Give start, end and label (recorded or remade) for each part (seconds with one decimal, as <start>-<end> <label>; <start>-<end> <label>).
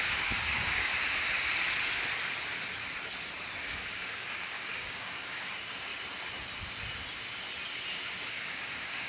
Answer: 0.0-0.9 remade; 0.9-3.6 recorded; 3.6-5.9 remade; 5.9-8.3 recorded; 8.3-9.1 remade